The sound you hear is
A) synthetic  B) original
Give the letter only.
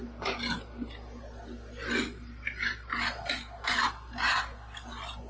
B